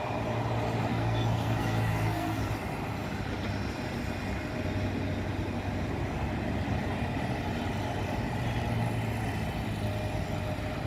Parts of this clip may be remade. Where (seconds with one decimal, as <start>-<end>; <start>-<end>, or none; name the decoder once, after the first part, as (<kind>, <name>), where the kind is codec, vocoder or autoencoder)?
0.9-2.5 (codec, SNAC)